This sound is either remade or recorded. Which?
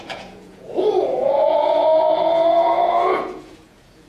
remade